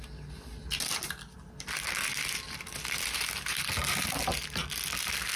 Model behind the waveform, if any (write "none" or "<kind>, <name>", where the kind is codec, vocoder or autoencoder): none